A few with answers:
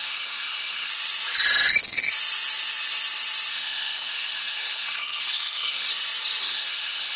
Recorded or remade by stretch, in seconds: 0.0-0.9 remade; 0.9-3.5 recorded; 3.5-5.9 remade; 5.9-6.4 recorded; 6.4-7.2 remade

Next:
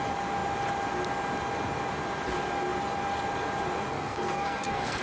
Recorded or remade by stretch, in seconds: 0.0-3.9 recorded; 3.9-5.0 remade

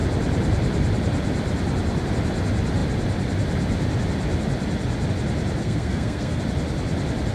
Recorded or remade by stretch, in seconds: 0.0-5.6 recorded; 5.6-6.4 remade; 6.4-7.3 recorded

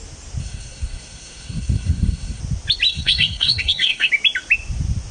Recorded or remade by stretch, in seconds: 0.0-0.4 recorded; 0.4-2.4 remade; 2.4-2.9 recorded; 2.9-4.1 remade; 4.1-5.1 recorded

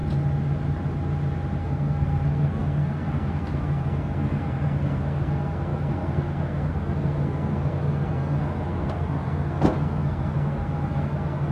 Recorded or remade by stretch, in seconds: 0.0-1.6 recorded; 1.6-11.5 remade

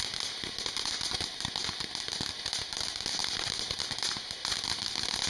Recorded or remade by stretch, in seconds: 0.0-5.3 recorded

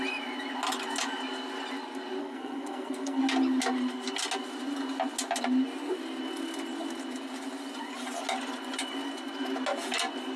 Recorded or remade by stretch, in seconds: 0.0-2.2 recorded; 2.2-3.2 remade; 3.2-10.4 recorded

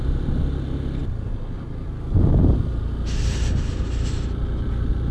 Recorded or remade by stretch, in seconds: 0.0-5.1 recorded